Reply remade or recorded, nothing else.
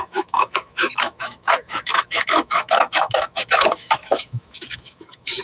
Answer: remade